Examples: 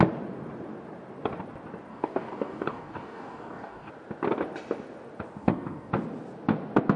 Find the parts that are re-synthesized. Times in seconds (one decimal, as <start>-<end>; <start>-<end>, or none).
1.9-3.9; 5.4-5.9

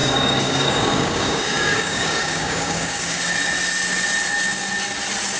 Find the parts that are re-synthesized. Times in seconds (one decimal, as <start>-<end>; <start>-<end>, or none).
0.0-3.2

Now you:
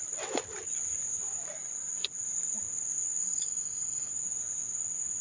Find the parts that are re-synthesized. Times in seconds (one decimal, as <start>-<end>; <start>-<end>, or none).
3.2-4.1

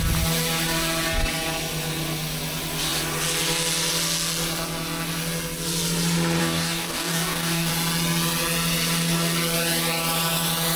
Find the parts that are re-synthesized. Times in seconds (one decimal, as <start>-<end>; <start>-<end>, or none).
6.4-7.7

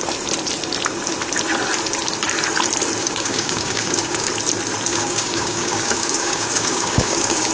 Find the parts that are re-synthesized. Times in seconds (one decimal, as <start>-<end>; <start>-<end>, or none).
3.0-4.3; 4.9-7.5

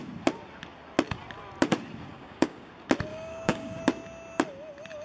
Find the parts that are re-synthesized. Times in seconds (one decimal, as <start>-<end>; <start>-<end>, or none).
2.1-2.7; 3.1-3.8